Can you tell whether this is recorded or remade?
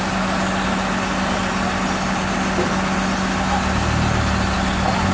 recorded